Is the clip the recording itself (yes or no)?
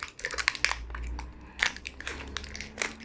yes